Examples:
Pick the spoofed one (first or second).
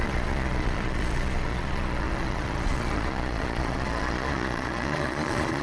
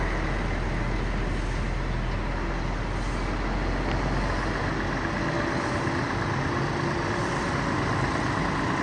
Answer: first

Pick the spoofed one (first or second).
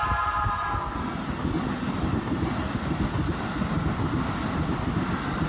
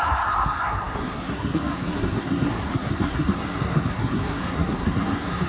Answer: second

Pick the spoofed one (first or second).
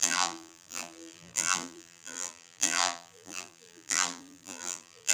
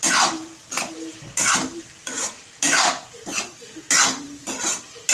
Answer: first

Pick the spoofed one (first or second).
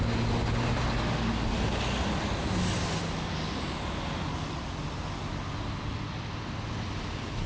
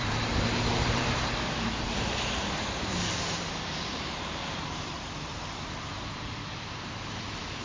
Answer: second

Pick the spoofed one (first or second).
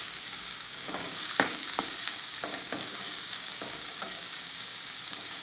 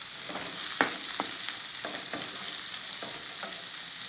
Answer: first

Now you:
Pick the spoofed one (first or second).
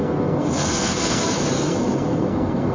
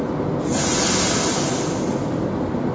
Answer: first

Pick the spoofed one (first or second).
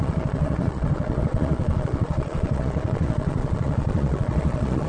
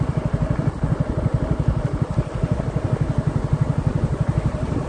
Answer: first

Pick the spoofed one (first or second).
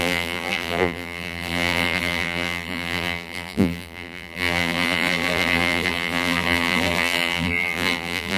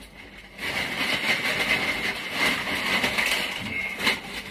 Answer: first